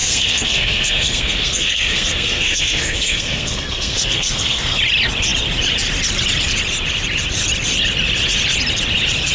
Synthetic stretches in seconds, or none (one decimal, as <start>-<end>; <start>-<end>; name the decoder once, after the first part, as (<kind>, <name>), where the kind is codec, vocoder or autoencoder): 0.0-4.8 (codec, SNAC)